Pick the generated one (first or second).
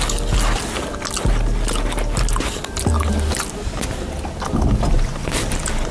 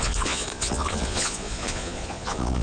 second